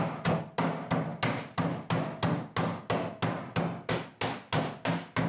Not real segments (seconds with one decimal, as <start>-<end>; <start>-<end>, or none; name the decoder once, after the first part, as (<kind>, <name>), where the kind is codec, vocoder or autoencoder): none